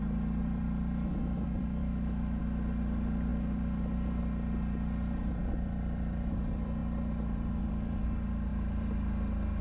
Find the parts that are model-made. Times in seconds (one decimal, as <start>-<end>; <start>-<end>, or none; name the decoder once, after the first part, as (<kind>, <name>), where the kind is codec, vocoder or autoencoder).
1.8-2.4 (autoencoder, DAC-VAE)